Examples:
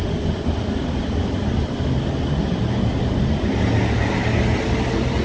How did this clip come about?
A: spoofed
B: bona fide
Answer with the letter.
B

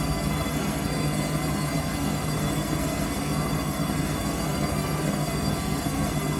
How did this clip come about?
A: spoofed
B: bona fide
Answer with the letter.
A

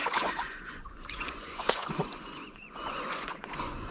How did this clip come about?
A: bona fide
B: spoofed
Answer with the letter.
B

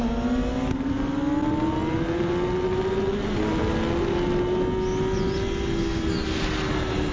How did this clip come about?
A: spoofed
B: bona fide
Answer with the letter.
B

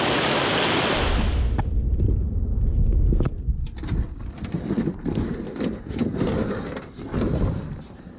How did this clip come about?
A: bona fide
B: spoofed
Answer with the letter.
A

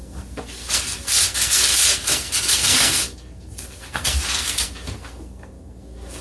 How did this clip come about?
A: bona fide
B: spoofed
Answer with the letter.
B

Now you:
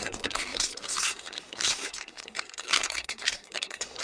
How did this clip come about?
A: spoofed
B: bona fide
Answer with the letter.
A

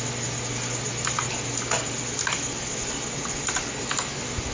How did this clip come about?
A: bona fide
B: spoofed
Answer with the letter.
A